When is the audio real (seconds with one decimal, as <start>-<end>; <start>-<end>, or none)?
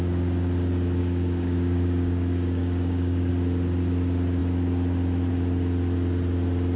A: 0.0-1.0; 3.3-6.8